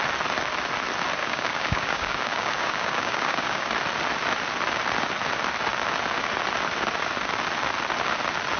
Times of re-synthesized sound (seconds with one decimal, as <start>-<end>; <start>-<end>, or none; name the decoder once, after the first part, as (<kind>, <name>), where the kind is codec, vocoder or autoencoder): 1.2-3.7 (codec, DAC)